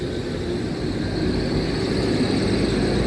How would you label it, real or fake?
real